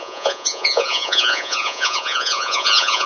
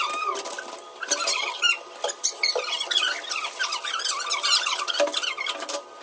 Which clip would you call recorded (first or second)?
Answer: second